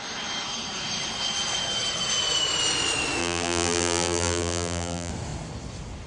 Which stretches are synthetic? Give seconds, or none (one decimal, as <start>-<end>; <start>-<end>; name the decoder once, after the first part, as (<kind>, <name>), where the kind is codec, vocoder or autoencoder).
3.2-5.1 (vocoder, BigVGAN v2)